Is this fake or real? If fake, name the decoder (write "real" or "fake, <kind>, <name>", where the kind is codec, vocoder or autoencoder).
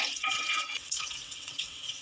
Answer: fake, vocoder, WaveNeXt